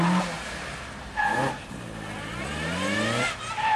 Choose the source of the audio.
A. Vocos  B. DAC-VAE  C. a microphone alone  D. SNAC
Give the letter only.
C